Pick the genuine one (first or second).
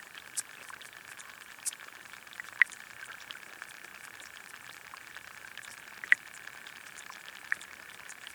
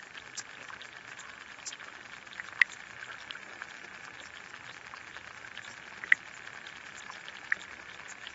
second